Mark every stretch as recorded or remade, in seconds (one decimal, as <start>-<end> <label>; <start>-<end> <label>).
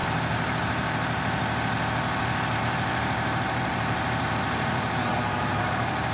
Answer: 0.0-2.6 recorded; 2.6-6.1 remade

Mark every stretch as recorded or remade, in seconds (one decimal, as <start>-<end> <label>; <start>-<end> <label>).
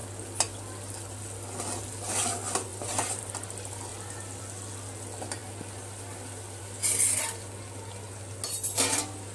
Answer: 0.0-9.3 recorded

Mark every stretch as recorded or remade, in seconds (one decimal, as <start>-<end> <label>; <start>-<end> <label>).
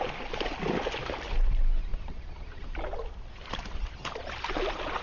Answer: 0.0-5.0 recorded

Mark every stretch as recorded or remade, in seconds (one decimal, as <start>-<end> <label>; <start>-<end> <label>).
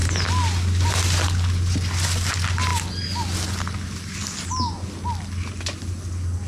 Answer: 0.0-6.5 recorded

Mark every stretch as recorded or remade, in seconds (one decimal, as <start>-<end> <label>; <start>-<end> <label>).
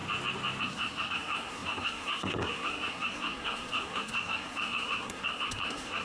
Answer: 0.0-0.6 recorded; 0.6-6.0 remade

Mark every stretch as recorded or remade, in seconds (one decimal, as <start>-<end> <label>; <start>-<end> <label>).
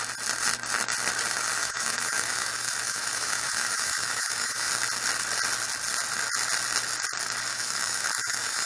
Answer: 0.0-1.6 recorded; 1.6-4.7 remade; 4.7-7.5 recorded; 7.5-8.7 remade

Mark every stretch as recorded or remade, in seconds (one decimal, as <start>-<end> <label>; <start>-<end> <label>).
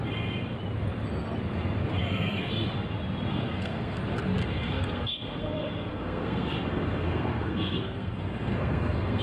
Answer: 0.0-2.0 recorded; 2.0-2.5 remade; 2.5-3.3 recorded; 3.3-4.0 remade; 4.0-4.4 recorded; 4.4-9.2 remade